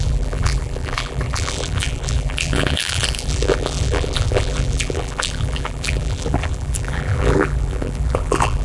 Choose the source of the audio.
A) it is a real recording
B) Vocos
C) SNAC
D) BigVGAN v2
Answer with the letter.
D